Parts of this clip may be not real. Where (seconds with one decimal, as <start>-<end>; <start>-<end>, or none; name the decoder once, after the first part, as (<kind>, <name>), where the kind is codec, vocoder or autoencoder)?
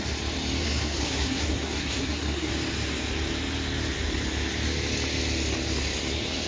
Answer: 0.6-2.5 (codec, SNAC)